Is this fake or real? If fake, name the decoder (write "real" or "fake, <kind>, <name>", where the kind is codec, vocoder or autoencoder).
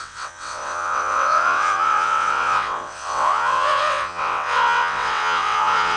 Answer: fake, vocoder, WaveNeXt